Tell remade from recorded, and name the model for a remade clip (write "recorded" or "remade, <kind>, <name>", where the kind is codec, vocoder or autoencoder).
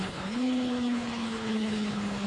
remade, codec, HILCodec